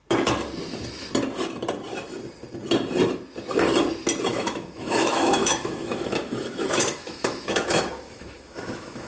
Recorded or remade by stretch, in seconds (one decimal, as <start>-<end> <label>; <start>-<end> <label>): 0.0-4.3 recorded; 4.3-9.1 remade